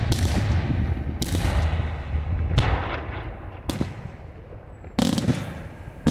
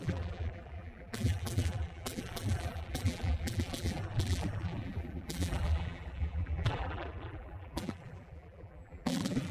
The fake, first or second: second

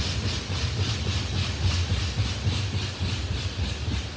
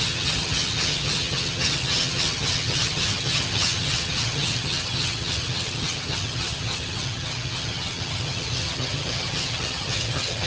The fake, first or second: second